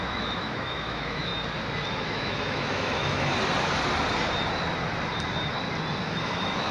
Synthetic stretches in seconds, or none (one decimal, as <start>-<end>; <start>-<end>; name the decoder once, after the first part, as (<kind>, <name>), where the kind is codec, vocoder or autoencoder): 0.0-1.3 (autoencoder, DAC-VAE); 1.9-3.3; 6.0-6.7